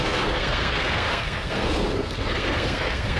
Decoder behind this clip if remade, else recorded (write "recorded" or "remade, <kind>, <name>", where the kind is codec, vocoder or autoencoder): remade, codec, SNAC